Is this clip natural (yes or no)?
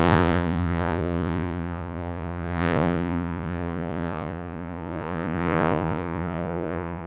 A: no